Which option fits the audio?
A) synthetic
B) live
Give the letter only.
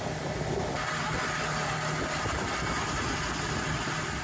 B